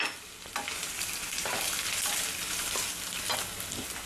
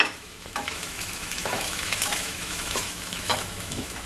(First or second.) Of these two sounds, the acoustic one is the first